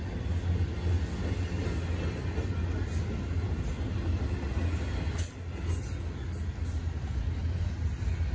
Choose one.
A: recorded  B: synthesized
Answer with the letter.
A